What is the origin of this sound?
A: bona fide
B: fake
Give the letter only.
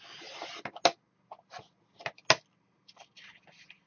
A